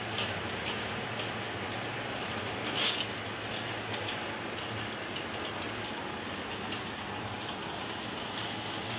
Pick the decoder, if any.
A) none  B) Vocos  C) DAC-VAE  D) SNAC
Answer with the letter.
A